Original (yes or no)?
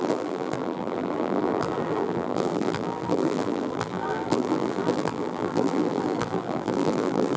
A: no